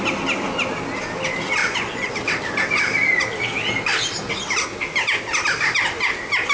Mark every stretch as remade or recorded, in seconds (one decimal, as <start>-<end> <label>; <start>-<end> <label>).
0.0-1.6 recorded; 1.6-2.1 remade; 2.1-6.5 recorded